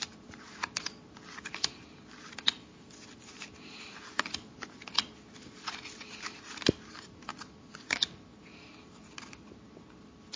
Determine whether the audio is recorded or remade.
recorded